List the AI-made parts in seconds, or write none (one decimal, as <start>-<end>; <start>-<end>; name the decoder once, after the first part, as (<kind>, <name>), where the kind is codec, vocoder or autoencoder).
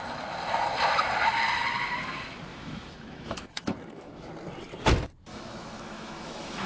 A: 2.5-4.3 (autoencoder, DAC-VAE); 5.3-6.7